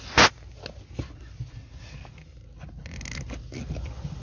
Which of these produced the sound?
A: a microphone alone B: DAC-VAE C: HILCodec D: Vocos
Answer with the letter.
A